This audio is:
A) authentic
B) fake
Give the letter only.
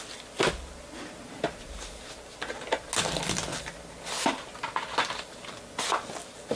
A